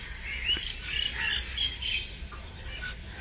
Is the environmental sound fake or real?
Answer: real